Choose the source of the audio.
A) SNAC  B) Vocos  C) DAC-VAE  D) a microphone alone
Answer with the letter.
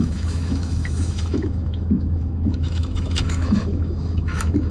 C